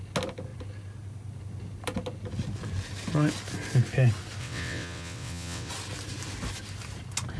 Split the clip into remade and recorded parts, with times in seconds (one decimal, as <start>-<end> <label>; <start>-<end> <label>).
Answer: 0.0-4.4 recorded; 4.4-5.7 remade; 5.7-7.4 recorded